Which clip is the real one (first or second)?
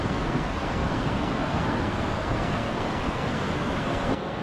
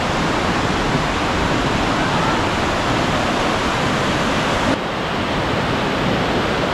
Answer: second